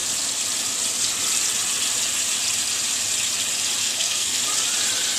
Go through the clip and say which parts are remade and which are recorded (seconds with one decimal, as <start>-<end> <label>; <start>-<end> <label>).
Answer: 0.0-3.8 recorded; 3.8-4.4 remade; 4.4-5.2 recorded